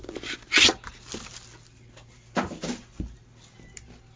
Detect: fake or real real